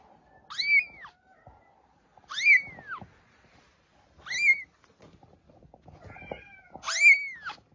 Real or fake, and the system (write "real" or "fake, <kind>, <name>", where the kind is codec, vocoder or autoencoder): real